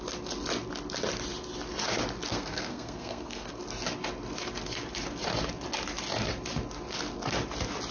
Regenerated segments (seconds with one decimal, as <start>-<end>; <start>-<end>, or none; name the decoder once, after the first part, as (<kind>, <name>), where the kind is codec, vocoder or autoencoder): 2.3-3.6 (codec, SNAC)